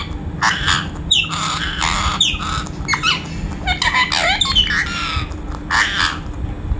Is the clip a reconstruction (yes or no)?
no